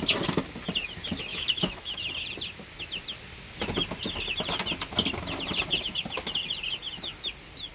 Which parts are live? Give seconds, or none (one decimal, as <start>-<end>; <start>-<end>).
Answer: 0.0-1.3; 2.1-7.7